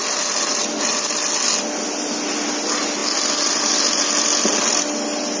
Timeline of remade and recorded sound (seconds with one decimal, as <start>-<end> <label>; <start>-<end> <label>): 0.0-5.4 recorded